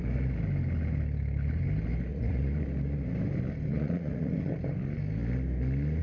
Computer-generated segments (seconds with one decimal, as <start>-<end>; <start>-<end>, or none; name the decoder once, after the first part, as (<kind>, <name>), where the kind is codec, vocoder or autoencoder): 2.1-2.6 (vocoder, Vocos); 3.7-4.5